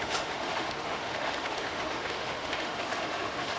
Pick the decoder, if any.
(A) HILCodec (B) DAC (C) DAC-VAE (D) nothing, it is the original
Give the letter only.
C